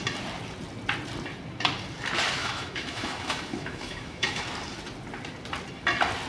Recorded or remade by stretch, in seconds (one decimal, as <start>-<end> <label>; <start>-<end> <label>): 0.0-2.4 recorded; 2.4-4.4 remade; 4.4-6.3 recorded